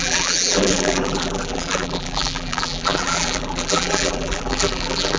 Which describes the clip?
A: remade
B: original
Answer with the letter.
A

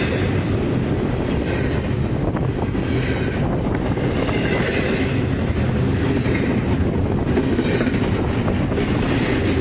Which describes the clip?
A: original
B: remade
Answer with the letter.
A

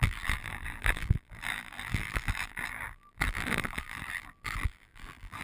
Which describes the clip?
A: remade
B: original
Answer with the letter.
A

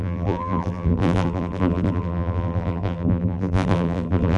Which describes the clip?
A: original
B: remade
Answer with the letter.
B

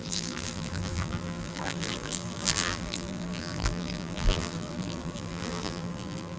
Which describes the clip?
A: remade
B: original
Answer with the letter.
A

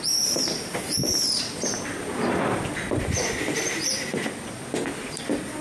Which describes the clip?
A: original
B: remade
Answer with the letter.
B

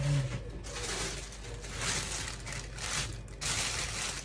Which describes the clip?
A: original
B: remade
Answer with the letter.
A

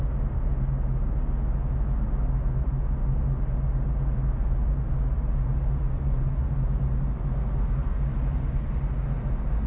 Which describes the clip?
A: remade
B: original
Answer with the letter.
B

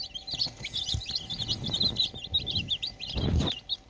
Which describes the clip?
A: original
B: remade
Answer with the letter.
A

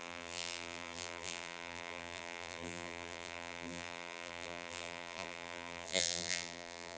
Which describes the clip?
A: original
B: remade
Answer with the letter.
B